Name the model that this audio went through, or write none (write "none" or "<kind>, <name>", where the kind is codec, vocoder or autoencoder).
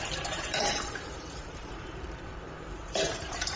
vocoder, BigVGAN v2